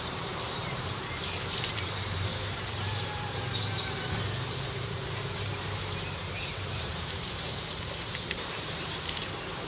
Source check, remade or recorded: remade